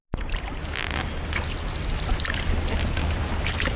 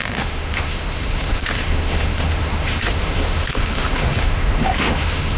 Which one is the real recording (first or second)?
first